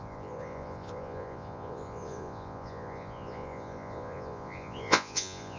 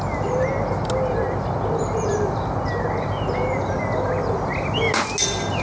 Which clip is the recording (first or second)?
second